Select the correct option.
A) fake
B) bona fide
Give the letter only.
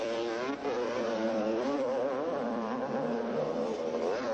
A